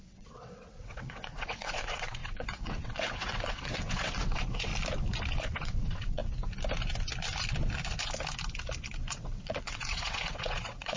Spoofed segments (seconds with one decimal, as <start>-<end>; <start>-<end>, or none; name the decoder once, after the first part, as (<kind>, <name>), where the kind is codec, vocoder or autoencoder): 0.0-4.7 (vocoder, WaveNeXt); 5.4-6.2; 9.1-11.0